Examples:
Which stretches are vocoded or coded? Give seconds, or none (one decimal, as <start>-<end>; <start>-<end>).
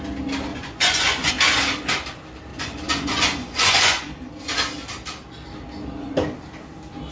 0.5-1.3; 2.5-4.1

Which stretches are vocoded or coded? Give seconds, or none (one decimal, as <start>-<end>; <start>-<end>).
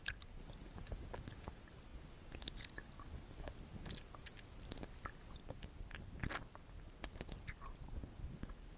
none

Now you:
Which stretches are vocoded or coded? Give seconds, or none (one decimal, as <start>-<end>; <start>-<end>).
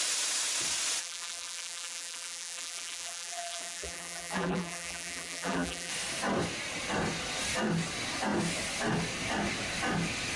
1.0-5.9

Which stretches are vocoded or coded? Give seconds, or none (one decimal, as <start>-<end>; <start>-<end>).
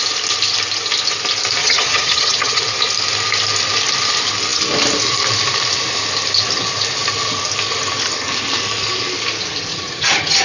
1.6-2.6; 9.7-10.4